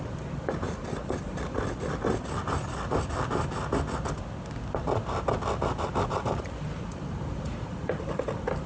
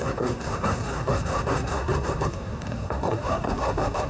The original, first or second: first